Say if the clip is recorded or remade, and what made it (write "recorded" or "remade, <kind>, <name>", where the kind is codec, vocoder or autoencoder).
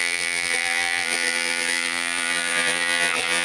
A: remade, vocoder, BigVGAN v2